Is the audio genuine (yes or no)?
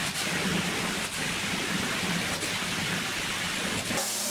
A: yes